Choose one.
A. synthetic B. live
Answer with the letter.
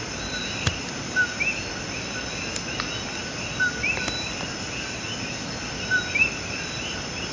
B